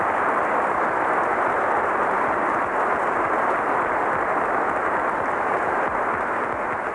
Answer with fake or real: real